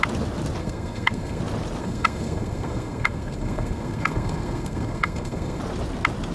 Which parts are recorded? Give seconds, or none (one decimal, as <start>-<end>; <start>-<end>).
0.0-0.6; 1.4-1.8; 5.6-6.3